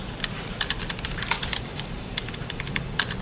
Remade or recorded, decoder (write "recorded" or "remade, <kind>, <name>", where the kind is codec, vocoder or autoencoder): remade, vocoder, BigVGAN v2